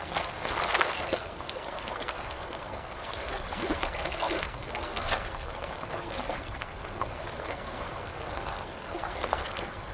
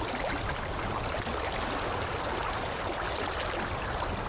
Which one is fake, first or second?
first